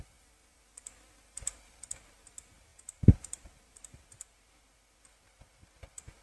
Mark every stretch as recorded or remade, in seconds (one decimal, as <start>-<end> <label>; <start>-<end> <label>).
0.0-0.5 recorded; 0.5-1.8 remade; 1.8-2.7 recorded; 2.7-3.9 remade; 3.9-6.2 recorded